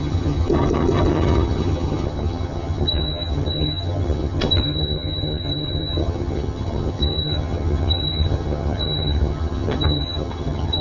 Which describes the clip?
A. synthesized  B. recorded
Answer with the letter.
A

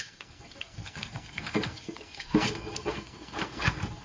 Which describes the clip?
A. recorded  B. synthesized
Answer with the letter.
B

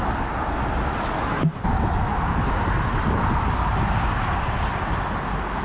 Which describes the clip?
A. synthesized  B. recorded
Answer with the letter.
B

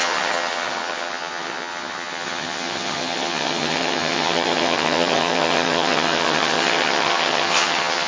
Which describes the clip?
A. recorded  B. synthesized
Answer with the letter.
B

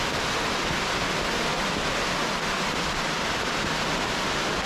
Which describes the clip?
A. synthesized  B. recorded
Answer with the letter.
B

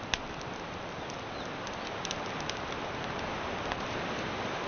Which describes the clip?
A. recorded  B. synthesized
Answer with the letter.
A